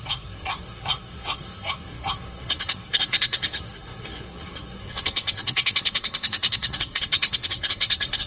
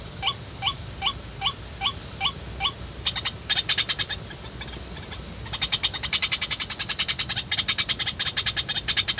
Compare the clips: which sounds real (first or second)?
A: second